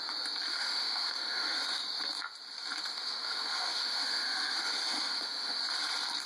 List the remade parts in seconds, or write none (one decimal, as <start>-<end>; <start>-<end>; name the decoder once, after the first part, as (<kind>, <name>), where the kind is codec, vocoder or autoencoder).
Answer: 0.5-1.6 (autoencoder, DAC-VAE); 2.9-5.6